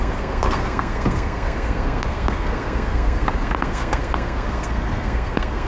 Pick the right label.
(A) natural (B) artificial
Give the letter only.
B